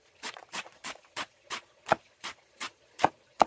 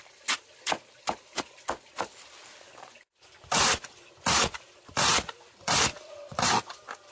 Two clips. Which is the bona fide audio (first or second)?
second